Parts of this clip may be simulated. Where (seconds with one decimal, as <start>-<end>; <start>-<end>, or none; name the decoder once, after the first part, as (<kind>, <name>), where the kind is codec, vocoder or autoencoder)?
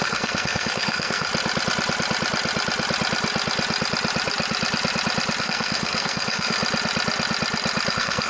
0.0-1.3 (codec, SNAC); 5.4-6.6; 7.9-8.3